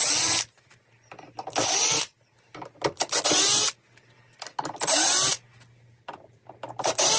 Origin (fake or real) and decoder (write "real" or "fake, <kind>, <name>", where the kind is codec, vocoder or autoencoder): real